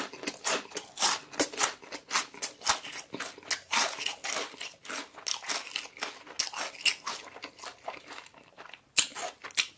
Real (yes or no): yes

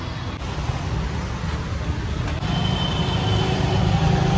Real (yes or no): yes